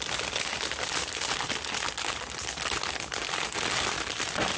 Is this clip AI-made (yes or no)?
no